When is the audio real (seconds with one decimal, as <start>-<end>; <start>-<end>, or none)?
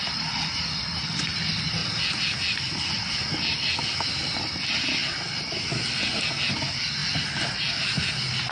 0.0-8.5